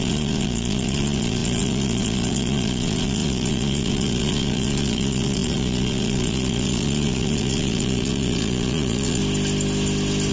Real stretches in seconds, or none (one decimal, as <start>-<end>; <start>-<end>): 9.2-10.3